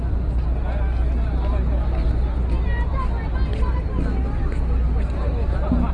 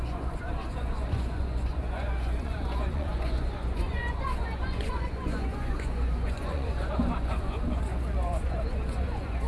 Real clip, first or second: first